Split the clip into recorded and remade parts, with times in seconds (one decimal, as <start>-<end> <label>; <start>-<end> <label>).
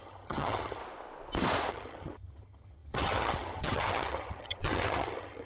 0.0-0.8 remade; 0.8-1.7 recorded; 1.7-5.5 remade